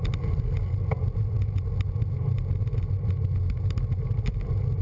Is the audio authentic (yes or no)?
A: yes